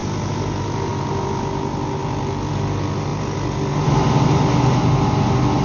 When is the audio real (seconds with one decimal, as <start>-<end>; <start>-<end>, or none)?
0.0-3.1; 4.2-5.6